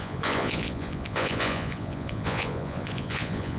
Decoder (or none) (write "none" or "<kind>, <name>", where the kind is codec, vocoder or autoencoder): vocoder, Vocos